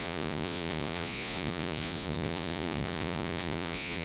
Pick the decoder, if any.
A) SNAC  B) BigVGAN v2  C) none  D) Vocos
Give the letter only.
D